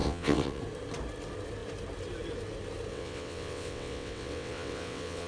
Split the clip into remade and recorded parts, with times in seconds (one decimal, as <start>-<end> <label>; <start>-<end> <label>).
0.0-0.6 remade; 0.6-2.9 recorded; 2.9-5.3 remade